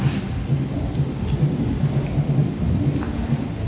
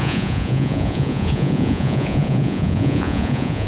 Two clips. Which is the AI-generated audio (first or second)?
second